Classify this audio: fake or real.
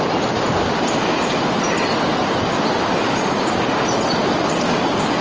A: real